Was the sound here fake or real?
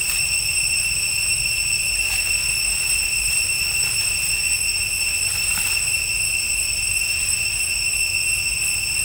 real